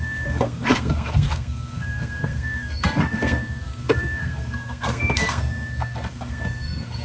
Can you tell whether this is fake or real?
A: fake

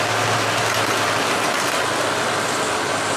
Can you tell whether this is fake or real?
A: real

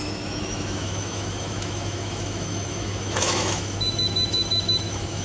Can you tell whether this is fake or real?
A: fake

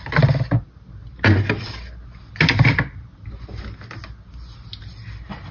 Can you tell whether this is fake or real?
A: real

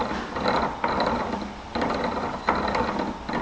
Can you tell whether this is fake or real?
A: real